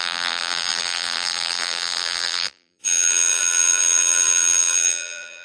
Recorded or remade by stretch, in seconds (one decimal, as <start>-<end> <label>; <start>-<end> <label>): 0.0-5.4 remade